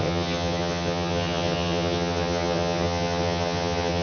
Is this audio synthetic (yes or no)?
yes